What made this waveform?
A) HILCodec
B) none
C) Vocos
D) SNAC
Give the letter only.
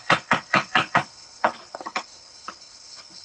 A